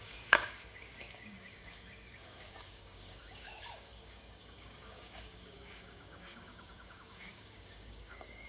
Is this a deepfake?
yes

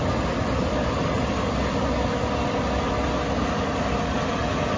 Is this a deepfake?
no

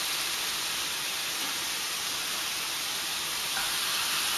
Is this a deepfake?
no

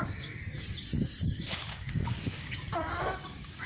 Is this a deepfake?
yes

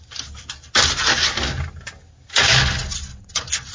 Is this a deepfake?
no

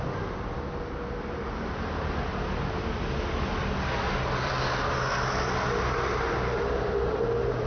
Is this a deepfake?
no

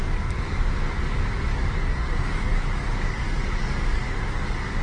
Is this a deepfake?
yes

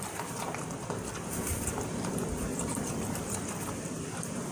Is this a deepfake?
no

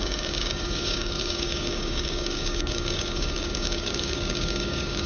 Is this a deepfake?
yes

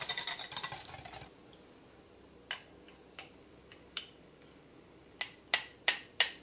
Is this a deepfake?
no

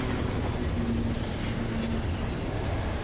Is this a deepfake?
no